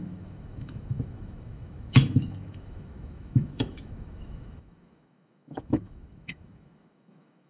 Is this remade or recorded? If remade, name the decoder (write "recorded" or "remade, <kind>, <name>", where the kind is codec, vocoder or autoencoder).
remade, autoencoder, DAC-VAE